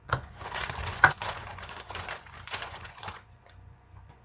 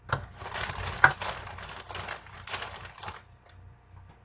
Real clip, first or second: second